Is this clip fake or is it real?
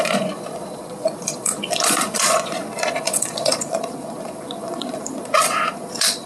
fake